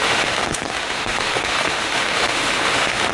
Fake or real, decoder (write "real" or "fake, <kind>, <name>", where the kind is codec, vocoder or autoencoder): fake, autoencoder, DAC-VAE